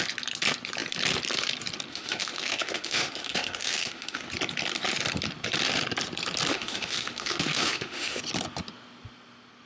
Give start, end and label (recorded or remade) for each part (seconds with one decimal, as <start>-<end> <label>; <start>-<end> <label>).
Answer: 0.0-1.9 recorded; 1.9-4.3 remade; 4.3-6.5 recorded; 6.5-8.2 remade; 8.2-9.7 recorded